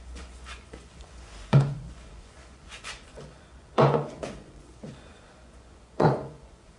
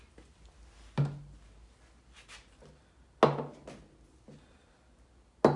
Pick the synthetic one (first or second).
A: first